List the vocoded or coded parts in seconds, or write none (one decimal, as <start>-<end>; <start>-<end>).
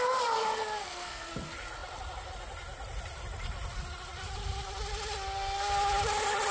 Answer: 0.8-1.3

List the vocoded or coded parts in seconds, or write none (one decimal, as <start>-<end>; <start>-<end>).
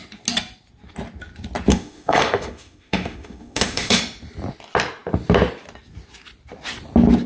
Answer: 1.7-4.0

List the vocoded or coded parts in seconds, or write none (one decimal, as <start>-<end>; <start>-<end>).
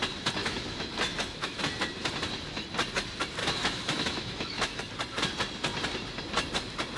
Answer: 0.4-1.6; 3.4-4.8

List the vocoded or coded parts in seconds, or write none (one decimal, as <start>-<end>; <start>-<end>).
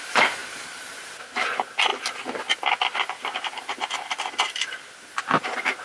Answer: 0.0-1.9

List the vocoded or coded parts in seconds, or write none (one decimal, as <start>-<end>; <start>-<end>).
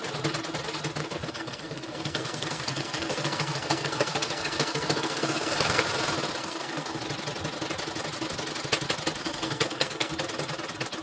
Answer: 1.0-5.8; 6.4-7.0; 9.2-10.1